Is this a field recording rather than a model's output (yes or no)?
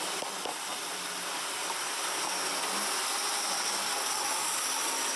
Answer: yes